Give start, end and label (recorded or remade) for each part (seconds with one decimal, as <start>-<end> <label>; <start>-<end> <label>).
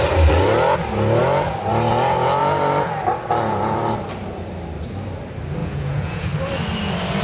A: 0.0-5.6 recorded; 5.6-6.3 remade; 6.3-7.2 recorded